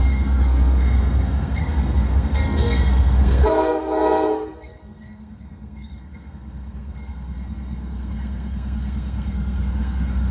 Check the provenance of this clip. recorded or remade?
remade